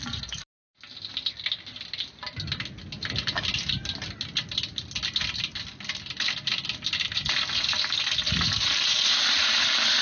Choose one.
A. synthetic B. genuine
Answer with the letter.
B